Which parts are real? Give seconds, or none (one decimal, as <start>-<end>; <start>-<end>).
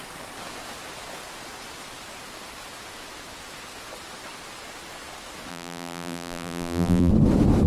0.0-5.5; 7.1-7.7